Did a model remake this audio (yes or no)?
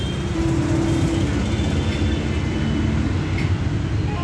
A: no